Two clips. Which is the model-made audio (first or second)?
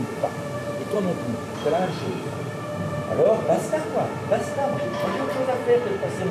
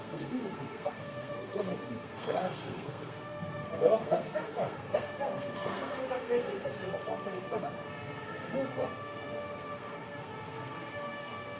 second